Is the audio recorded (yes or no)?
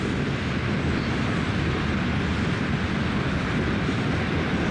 yes